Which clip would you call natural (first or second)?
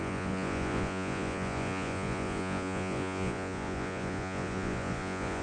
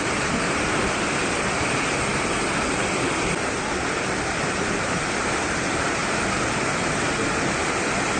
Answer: second